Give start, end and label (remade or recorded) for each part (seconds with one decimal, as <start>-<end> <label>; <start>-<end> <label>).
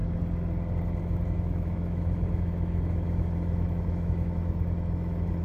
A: 0.0-1.0 recorded; 1.0-5.4 remade